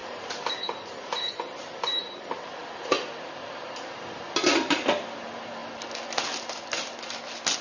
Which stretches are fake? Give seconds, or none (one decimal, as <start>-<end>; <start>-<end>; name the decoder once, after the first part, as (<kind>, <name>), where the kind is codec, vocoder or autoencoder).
0.0-4.1 (vocoder, BigVGAN v2)

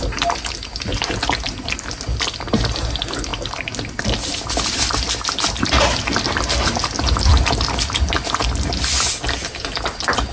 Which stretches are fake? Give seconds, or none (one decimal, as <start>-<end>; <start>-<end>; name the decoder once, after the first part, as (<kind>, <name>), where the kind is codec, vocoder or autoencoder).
none

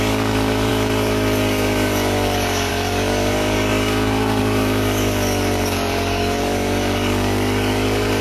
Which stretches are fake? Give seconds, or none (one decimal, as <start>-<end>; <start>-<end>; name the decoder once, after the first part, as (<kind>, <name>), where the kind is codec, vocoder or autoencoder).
0.0-8.2 (codec, DAC)